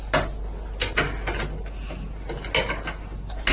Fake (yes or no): no